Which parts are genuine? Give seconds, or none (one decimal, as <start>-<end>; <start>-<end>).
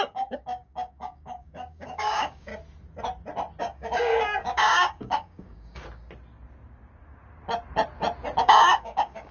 2.5-3.6; 5.8-8.4